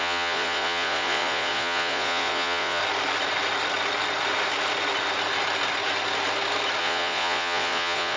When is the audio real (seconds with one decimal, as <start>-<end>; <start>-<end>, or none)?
2.8-6.8